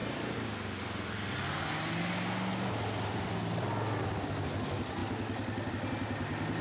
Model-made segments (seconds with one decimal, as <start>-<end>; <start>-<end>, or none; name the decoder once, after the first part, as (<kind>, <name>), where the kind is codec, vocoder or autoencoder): none